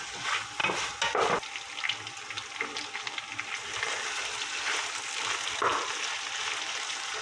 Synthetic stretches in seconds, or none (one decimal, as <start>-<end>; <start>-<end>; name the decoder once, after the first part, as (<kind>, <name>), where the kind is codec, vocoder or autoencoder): none